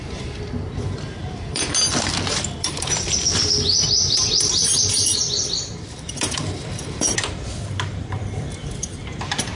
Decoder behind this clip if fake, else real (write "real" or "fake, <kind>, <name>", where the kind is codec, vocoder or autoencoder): fake, vocoder, BigVGAN v2